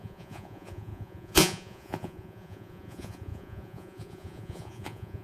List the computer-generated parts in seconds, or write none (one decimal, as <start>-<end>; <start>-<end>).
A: 0.0-5.2